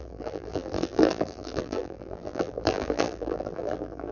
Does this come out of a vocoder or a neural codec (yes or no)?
yes